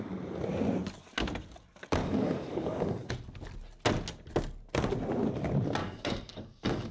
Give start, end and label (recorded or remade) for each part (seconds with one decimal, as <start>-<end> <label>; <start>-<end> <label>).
0.0-2.0 recorded; 2.0-3.1 remade; 3.1-5.8 recorded; 5.8-6.9 remade